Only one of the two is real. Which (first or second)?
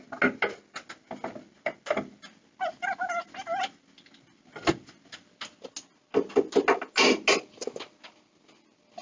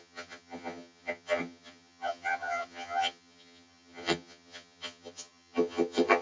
first